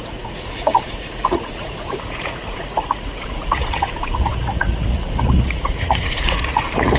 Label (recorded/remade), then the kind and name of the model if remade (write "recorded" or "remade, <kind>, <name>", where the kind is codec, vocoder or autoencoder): remade, vocoder, Vocos